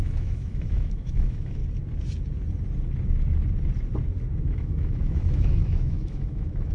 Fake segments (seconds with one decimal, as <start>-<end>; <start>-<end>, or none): 0.0-1.6; 4.4-6.7